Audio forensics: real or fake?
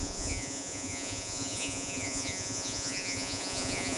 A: fake